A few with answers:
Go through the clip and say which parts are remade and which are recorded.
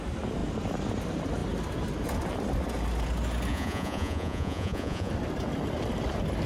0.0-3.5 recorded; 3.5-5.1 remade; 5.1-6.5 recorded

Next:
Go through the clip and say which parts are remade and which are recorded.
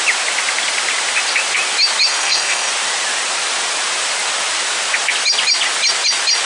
0.0-2.1 recorded; 2.1-2.7 remade; 2.7-6.5 recorded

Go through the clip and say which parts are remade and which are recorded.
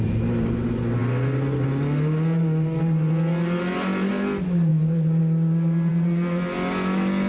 0.0-7.3 recorded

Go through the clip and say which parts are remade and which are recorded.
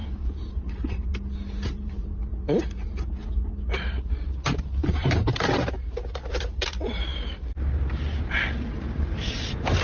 0.0-1.1 remade; 1.1-1.7 recorded; 1.7-2.3 remade; 2.3-3.8 recorded; 3.8-9.8 remade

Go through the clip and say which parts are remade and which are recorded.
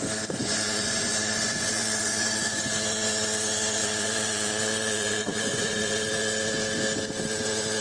0.0-0.4 recorded; 0.4-2.6 remade; 2.6-3.8 recorded; 3.8-5.9 remade; 5.9-7.8 recorded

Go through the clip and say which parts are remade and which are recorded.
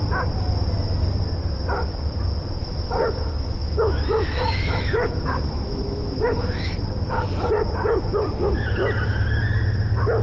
0.0-2.6 recorded; 2.6-6.7 remade; 6.7-10.2 recorded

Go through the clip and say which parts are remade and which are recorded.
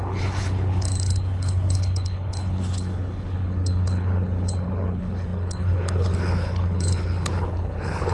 0.0-8.1 remade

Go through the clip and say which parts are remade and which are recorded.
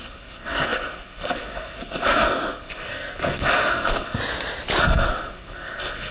0.0-4.2 remade; 4.2-4.8 recorded; 4.8-6.1 remade